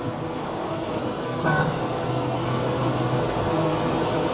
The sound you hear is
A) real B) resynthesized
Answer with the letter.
B